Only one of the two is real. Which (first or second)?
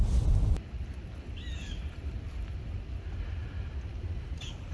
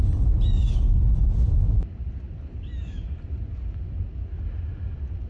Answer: second